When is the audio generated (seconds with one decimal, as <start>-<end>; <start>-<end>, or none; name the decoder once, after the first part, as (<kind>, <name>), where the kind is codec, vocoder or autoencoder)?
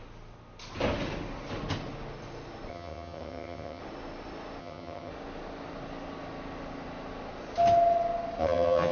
2.7-3.8 (vocoder, HiFi-GAN); 4.6-5.1; 8.4-8.9